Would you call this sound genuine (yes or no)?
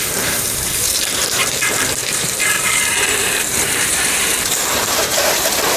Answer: no